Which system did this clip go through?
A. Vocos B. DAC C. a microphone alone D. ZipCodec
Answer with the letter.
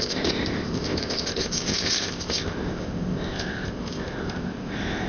D